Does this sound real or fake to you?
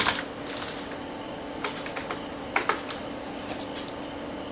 real